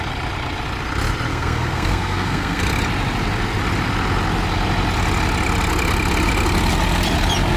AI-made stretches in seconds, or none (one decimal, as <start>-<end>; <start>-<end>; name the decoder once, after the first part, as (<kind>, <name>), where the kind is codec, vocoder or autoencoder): 1.3-2.6 (codec, SNAC)